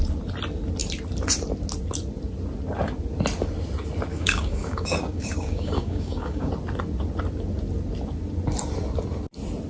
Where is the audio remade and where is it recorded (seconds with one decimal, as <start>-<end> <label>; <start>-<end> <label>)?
0.0-4.1 recorded; 4.1-6.5 remade; 6.5-9.7 recorded